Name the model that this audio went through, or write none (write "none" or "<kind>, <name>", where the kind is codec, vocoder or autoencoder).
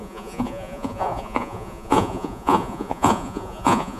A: vocoder, Vocos